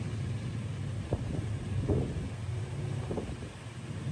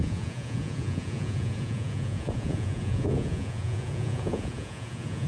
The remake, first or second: second